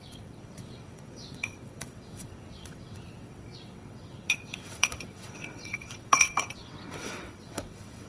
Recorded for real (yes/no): no